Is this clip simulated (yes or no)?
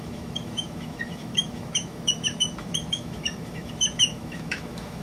yes